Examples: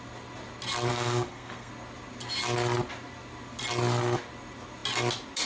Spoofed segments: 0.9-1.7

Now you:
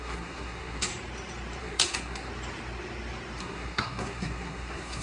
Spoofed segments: 0.0-0.9; 1.6-2.3; 3.4-5.0

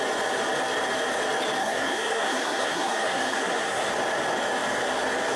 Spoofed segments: 1.6-3.9

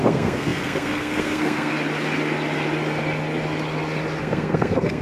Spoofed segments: 0.0-1.7; 4.2-5.0